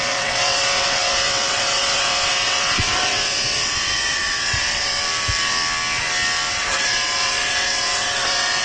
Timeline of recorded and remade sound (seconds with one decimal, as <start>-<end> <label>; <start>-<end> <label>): 0.0-5.0 remade; 5.0-6.5 recorded; 6.5-8.6 remade